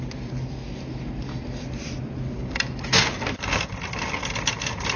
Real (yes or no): yes